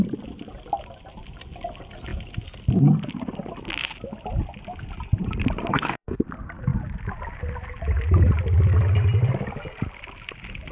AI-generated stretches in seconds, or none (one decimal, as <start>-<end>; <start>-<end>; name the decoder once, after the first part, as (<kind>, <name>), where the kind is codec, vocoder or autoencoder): 5.7-6.2 (codec, SNAC)